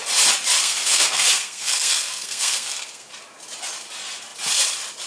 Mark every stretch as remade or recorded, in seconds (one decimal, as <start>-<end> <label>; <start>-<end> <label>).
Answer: 0.0-0.6 recorded; 0.6-3.1 remade; 3.1-5.1 recorded